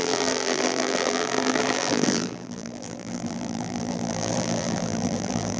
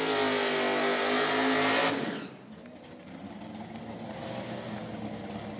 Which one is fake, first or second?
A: first